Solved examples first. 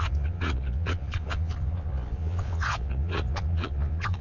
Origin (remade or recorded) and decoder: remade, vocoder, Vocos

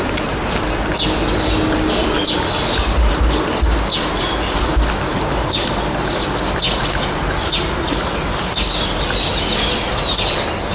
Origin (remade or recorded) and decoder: recorded